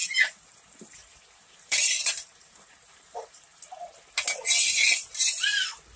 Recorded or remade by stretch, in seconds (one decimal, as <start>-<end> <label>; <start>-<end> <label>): 0.0-3.6 remade; 3.6-6.0 recorded